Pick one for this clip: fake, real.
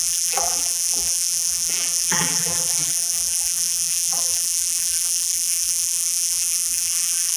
fake